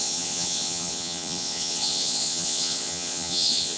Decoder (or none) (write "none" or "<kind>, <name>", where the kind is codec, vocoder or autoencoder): vocoder, Vocos